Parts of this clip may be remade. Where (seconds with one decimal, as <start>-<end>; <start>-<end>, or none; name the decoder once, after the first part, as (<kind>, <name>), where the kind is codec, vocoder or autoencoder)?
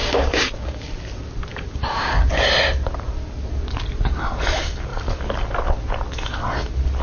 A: 0.0-0.9 (codec, DAC); 1.5-2.3